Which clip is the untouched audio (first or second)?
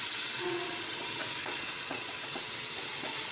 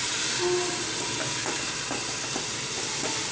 second